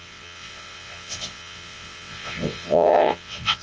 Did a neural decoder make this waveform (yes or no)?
yes